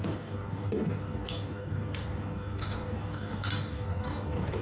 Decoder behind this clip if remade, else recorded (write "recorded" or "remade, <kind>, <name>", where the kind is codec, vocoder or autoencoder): remade, codec, DAC